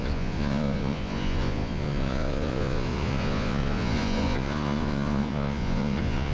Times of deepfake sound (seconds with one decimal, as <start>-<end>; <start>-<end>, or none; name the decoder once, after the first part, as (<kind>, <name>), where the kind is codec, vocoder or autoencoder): 0.0-6.3 (vocoder, Vocos)